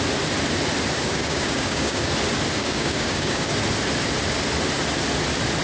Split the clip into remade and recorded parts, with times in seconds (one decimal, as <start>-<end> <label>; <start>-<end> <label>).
0.0-1.1 recorded; 1.1-2.1 remade; 2.1-2.6 recorded; 2.6-3.5 remade; 3.5-5.6 recorded